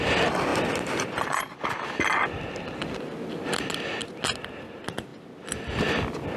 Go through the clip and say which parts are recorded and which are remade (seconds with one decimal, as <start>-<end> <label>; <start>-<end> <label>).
0.0-0.5 recorded; 0.5-1.6 remade; 1.6-6.4 recorded